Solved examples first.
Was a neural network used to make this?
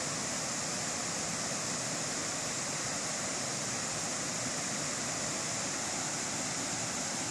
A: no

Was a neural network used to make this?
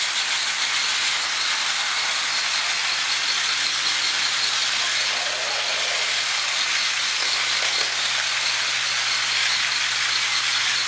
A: no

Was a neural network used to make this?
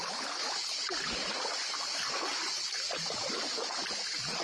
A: no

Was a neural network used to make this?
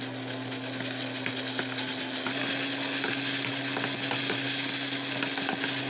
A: no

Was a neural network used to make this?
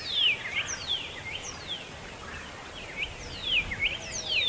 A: no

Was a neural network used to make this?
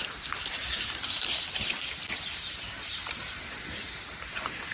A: yes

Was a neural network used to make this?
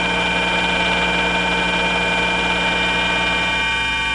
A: no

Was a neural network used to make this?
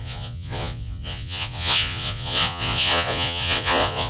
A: yes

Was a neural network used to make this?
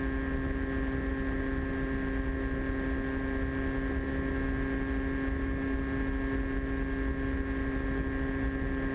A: no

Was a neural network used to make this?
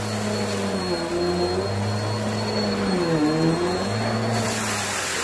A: no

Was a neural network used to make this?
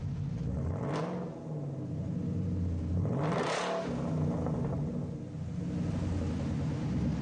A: no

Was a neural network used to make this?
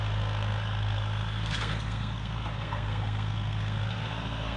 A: yes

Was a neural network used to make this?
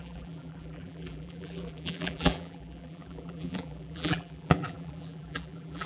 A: yes